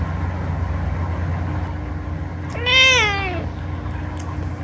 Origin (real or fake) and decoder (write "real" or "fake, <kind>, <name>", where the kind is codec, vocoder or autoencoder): real